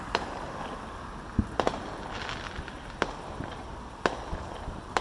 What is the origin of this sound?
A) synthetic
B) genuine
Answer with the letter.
B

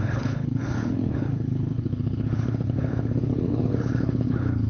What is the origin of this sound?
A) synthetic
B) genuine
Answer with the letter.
A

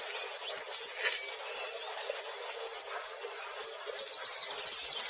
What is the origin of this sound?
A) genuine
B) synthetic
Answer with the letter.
A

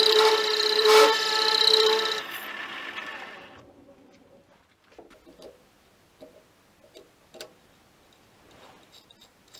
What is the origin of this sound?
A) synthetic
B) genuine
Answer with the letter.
B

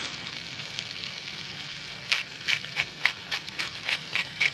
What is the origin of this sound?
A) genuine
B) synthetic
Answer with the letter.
B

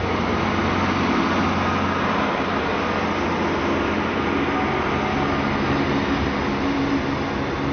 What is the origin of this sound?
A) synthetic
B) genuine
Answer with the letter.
B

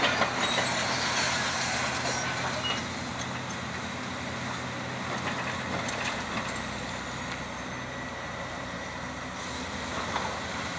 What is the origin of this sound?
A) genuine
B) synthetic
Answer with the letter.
A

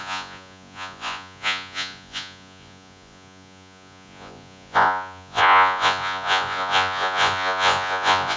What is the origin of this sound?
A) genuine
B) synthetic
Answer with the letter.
B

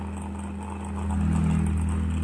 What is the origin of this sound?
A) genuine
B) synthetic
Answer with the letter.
A